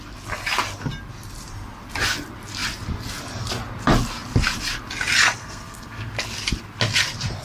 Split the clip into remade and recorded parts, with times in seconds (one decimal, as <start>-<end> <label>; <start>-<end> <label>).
0.0-5.4 recorded; 5.4-6.1 remade; 6.1-7.4 recorded